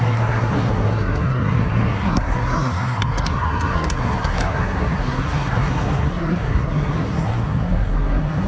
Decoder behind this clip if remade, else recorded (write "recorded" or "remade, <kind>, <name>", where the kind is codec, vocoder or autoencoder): remade, codec, SNAC